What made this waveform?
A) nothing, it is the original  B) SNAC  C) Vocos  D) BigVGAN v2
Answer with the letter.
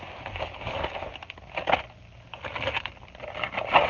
A